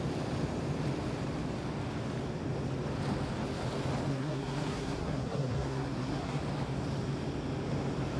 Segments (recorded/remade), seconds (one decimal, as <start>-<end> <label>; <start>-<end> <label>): 0.0-4.1 recorded; 4.1-6.4 remade; 6.4-8.2 recorded